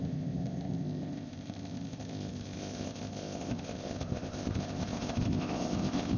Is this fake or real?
fake